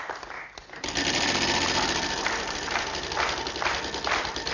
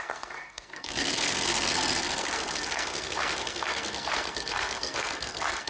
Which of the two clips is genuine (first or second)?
first